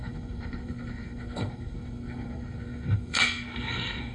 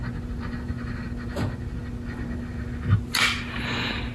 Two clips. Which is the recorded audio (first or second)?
second